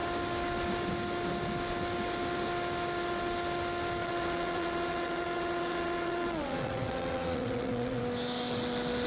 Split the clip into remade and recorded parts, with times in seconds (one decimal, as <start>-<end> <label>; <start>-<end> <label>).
0.0-4.0 recorded; 4.0-8.0 remade; 8.0-9.1 recorded